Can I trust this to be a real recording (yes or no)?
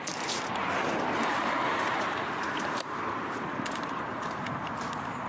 no